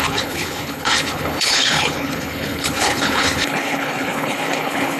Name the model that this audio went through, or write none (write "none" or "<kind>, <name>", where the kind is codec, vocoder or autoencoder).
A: codec, HILCodec